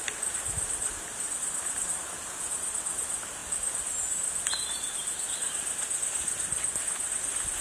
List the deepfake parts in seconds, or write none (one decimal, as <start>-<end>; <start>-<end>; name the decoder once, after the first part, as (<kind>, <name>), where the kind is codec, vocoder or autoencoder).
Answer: none